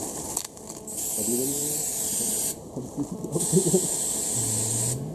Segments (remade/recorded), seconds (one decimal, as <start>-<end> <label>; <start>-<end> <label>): 0.0-5.1 recorded